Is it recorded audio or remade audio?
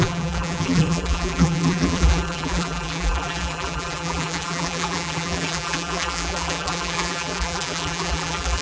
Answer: remade